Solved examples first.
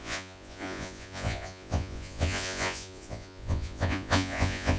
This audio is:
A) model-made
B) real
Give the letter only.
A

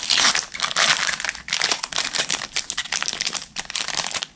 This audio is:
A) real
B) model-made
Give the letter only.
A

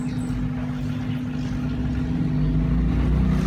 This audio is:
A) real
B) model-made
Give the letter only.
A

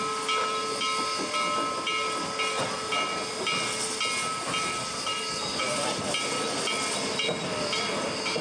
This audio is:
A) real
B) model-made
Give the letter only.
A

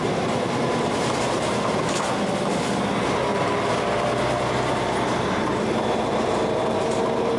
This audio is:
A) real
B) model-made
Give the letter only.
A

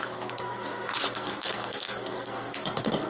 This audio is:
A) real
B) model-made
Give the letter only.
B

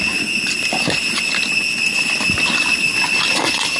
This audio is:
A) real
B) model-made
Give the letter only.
A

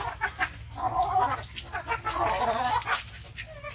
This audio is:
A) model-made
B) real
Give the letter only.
B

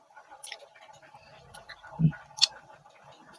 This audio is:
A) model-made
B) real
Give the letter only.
B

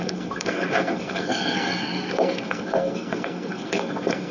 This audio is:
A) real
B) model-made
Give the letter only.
B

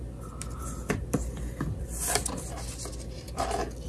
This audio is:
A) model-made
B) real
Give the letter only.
B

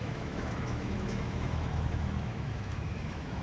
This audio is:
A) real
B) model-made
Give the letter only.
B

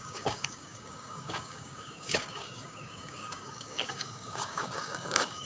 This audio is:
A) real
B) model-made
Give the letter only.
B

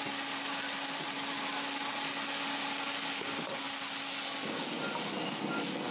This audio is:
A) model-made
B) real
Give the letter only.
B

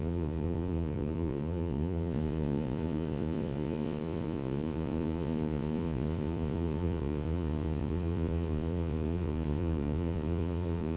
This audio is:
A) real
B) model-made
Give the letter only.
B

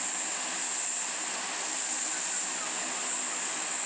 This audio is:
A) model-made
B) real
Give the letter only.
B